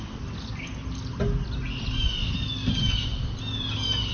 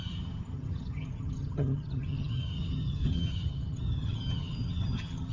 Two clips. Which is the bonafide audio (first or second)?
first